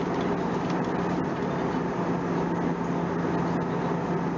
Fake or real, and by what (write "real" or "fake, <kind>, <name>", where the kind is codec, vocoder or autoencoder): real